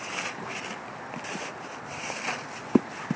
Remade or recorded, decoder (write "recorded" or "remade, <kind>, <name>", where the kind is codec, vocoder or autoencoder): recorded